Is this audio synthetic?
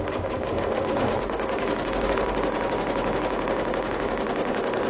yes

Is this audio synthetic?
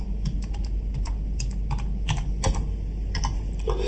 no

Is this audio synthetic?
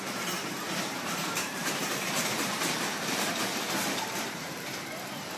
yes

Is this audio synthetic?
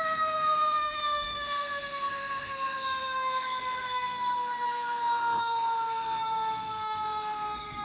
yes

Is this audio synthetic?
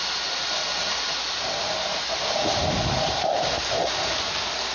no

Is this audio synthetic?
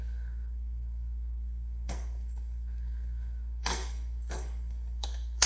yes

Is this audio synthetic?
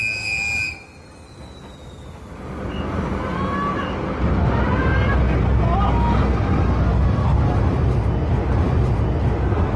no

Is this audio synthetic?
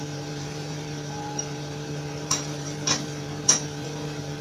yes